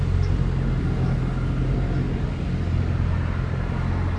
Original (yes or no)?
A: yes